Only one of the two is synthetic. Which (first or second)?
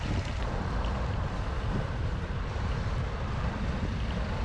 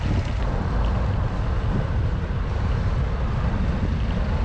first